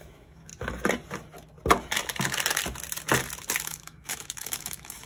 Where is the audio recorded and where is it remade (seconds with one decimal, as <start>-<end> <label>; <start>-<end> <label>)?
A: 0.0-0.5 remade; 0.5-3.6 recorded; 3.6-5.1 remade